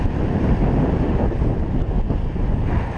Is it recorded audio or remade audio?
recorded